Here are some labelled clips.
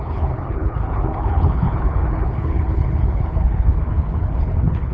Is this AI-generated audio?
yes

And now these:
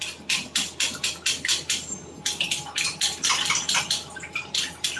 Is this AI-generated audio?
no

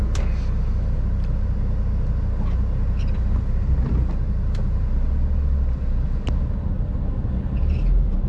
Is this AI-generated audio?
no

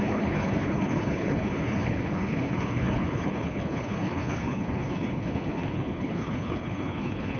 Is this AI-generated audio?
yes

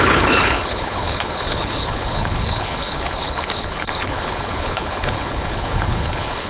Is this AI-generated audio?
yes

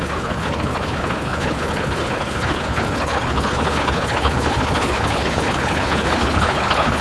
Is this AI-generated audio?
yes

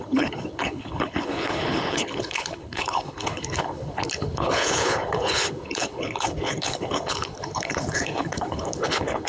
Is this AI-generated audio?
yes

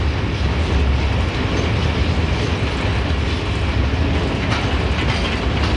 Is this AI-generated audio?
no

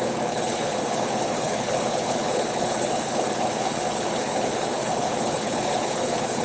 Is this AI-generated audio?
yes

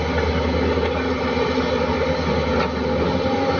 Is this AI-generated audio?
no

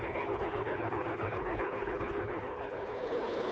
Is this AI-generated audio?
yes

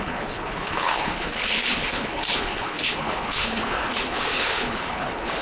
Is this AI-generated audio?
yes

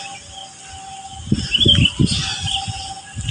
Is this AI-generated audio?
no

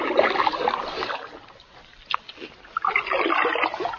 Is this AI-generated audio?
no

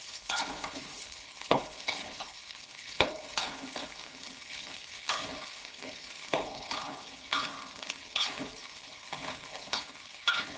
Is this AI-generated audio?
yes